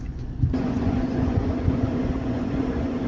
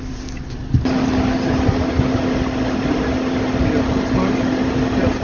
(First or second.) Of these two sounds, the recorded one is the second